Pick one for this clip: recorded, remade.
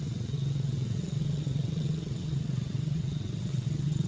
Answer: remade